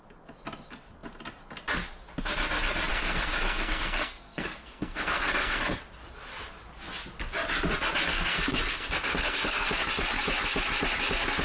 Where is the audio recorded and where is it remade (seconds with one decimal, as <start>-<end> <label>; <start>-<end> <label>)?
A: 0.0-2.9 recorded; 2.9-5.8 remade; 5.8-8.1 recorded; 8.1-9.7 remade; 9.7-11.4 recorded

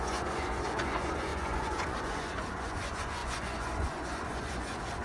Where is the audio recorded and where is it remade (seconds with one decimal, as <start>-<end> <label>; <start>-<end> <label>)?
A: 0.0-5.0 remade

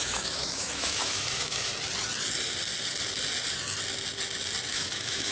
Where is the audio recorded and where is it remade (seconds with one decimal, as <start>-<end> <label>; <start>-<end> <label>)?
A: 0.0-1.7 remade; 1.7-4.7 recorded; 4.7-5.3 remade

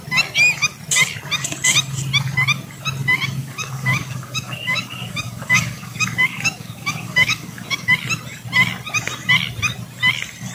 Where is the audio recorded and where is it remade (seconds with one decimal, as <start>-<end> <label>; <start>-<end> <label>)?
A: 0.0-3.4 recorded; 3.4-7.9 remade; 7.9-10.5 recorded

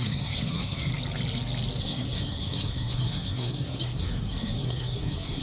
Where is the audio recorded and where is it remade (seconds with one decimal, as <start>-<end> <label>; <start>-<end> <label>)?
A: 0.0-0.9 remade; 0.9-1.8 recorded; 1.8-5.4 remade

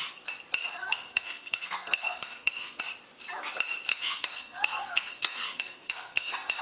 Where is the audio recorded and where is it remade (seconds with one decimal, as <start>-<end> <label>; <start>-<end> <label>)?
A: 0.0-0.8 recorded; 0.8-2.8 remade; 2.8-3.9 recorded; 3.9-6.6 remade

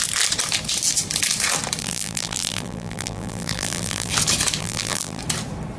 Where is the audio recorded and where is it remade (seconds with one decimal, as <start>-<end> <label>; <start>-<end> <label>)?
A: 0.0-1.8 recorded; 1.8-4.1 remade; 4.1-4.6 recorded; 4.6-5.2 remade; 5.2-5.8 recorded

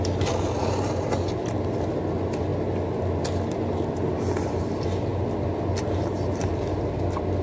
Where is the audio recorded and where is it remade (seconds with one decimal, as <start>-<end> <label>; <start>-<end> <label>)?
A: 0.0-7.4 recorded